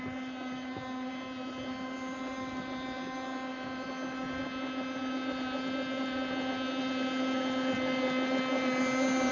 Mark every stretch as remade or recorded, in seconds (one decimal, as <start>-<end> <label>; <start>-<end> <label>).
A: 0.0-9.3 recorded